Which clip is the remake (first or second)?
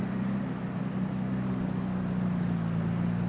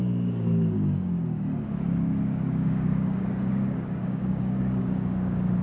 second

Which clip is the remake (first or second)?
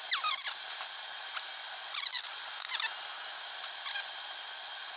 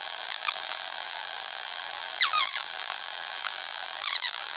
second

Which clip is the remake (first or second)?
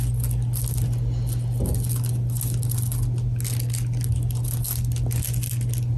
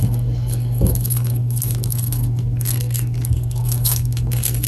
second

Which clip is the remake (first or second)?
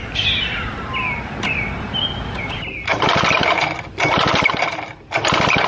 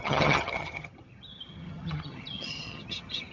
second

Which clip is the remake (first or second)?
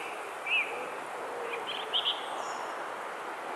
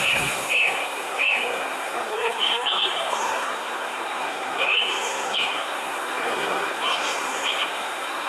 second